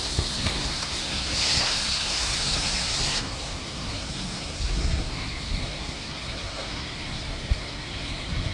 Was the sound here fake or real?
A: fake